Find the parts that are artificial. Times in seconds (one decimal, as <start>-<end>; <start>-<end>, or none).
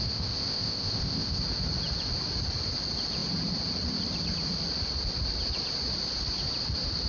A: 0.0-1.4